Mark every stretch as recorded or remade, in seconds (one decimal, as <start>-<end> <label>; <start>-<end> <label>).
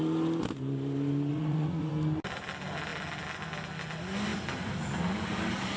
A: 0.0-1.3 recorded; 1.3-1.9 remade; 1.9-5.8 recorded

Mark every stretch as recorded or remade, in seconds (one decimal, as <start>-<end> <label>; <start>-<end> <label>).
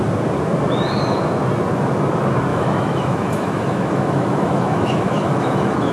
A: 0.0-2.5 recorded; 2.5-5.9 remade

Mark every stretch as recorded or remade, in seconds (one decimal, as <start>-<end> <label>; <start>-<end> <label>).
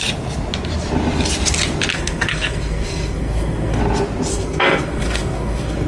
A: 0.0-1.9 recorded; 1.9-3.8 remade; 3.8-4.3 recorded; 4.3-5.9 remade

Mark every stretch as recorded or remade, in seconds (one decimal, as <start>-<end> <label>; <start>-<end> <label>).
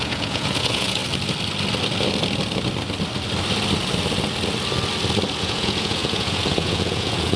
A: 0.0-1.0 remade; 1.0-5.4 recorded; 5.4-7.4 remade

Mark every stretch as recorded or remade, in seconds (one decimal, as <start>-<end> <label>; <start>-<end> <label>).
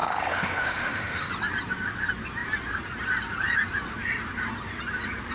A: 0.0-1.3 remade; 1.3-5.3 recorded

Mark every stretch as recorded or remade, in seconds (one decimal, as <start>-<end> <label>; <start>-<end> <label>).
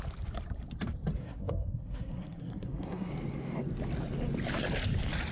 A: 0.0-1.2 recorded; 1.2-3.1 remade; 3.1-5.3 recorded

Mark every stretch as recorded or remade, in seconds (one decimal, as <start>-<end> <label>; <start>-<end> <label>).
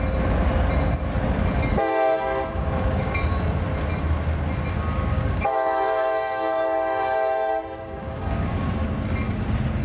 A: 0.0-1.7 recorded; 1.7-3.3 remade; 3.3-5.1 recorded; 5.1-8.7 remade; 8.7-9.8 recorded